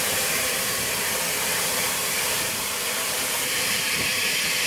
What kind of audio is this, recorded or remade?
remade